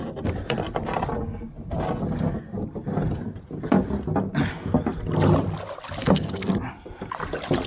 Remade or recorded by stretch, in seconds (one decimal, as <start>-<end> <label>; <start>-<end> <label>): 0.0-6.0 recorded; 6.0-6.5 remade; 6.5-7.7 recorded